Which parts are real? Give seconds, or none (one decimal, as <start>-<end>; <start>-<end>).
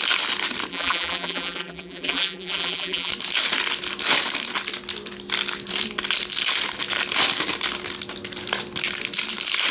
0.0-0.7; 3.1-9.7